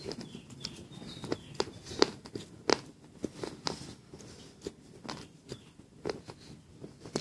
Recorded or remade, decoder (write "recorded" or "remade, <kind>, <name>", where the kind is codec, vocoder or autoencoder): recorded